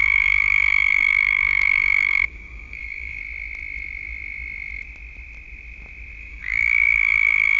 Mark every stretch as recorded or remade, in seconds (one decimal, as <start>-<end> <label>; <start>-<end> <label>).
0.0-3.2 remade; 3.2-6.2 recorded; 6.2-7.6 remade